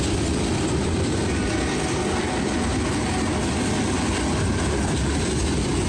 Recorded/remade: recorded